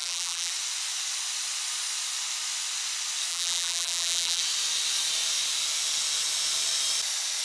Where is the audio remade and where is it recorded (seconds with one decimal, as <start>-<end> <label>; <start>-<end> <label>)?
0.0-0.5 remade; 0.5-3.3 recorded; 3.3-4.4 remade; 4.4-7.4 recorded